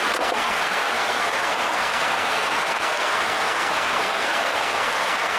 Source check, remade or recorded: remade